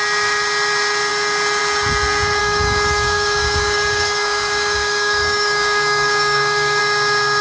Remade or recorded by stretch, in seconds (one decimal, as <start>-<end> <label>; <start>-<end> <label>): 0.0-2.4 recorded; 2.4-6.8 remade; 6.8-7.4 recorded